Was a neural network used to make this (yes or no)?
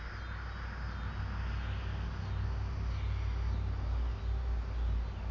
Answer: no